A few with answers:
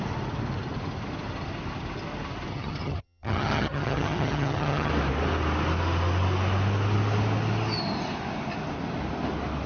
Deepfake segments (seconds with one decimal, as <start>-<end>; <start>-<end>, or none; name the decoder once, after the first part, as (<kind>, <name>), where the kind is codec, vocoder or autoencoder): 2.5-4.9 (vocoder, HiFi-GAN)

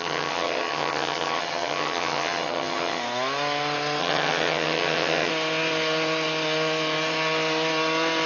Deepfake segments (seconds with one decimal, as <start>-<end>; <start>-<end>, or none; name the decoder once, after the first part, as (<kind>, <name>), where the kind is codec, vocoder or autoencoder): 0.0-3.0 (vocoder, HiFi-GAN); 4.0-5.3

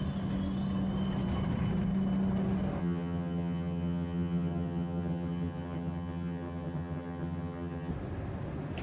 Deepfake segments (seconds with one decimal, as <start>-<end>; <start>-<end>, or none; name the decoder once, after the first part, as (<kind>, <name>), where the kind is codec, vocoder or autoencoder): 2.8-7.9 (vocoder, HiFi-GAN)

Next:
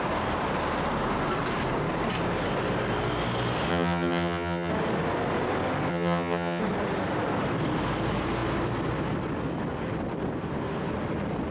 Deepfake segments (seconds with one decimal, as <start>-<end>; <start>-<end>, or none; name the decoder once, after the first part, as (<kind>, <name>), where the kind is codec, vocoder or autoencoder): 3.7-4.7 (vocoder, HiFi-GAN); 5.9-6.6

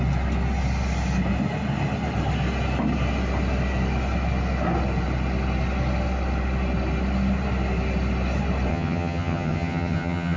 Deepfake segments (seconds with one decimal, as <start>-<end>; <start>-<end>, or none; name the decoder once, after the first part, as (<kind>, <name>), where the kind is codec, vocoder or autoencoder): 8.7-10.4 (vocoder, HiFi-GAN)

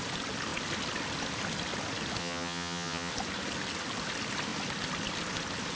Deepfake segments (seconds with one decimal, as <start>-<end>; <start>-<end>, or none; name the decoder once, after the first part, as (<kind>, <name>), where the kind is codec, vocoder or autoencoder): 2.2-3.1 (vocoder, HiFi-GAN)

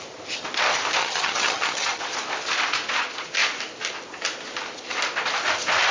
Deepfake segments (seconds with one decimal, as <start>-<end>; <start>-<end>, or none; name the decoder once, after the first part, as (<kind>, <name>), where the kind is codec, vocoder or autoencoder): 1.0-2.0 (vocoder, HiFi-GAN)

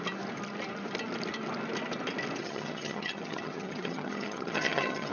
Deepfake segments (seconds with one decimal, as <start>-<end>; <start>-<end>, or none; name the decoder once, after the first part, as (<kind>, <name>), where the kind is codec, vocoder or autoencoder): 2.4-5.1 (vocoder, HiFi-GAN)